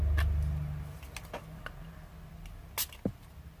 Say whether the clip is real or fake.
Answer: real